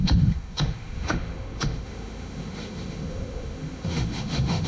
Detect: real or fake fake